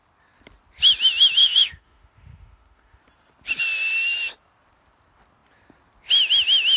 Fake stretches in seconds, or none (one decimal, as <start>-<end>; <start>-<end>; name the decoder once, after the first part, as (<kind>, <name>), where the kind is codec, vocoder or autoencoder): 1.4-3.0 (autoencoder, DAC-VAE)